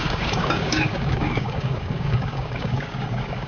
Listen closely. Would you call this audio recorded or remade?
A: remade